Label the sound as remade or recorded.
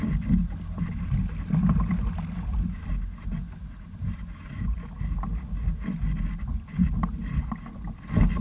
recorded